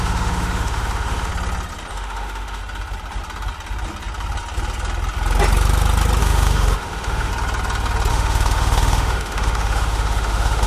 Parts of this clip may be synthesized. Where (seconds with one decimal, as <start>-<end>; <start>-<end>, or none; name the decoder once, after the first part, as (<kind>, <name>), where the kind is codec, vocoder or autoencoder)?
0.0-1.3 (autoencoder, DAC-VAE); 1.9-2.6; 6.2-7.3; 8.1-10.7